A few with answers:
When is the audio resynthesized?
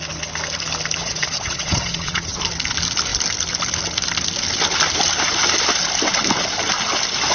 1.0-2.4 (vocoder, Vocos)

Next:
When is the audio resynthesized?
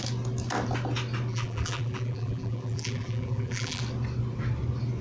1.3-3.8 (vocoder, BigVGAN v2)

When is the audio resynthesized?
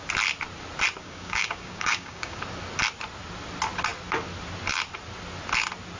1.0-2.4 (codec, DAC)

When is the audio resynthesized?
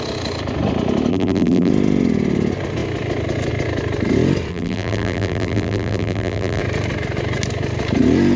1.1-1.7 (vocoder, BigVGAN v2); 4.5-6.6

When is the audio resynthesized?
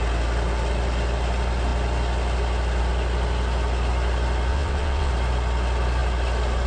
4.5-5.1 (vocoder, WaveNeXt)